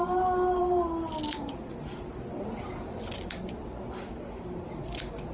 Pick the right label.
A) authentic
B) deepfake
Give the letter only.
A